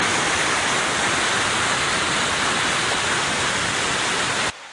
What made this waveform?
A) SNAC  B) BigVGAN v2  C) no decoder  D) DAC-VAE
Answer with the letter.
C